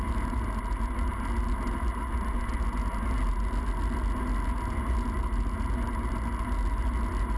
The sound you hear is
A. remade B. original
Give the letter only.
B